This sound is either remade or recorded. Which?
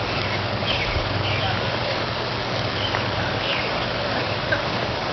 remade